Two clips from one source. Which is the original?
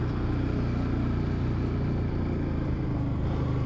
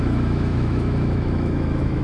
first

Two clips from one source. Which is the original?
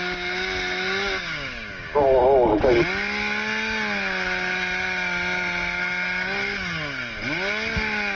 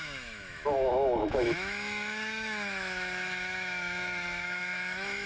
first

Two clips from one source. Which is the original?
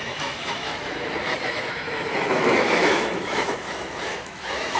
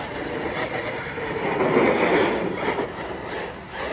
second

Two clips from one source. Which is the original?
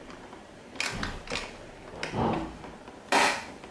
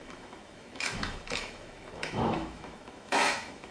first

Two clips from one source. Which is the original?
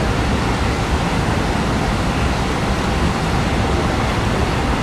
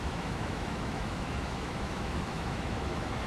first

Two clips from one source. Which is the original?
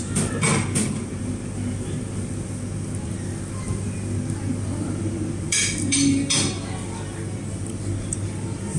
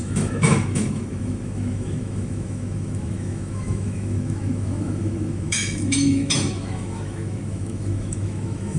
first